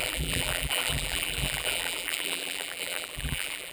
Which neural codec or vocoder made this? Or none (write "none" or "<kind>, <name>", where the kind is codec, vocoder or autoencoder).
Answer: vocoder, BigVGAN v2